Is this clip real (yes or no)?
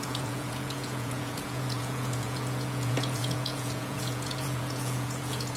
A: no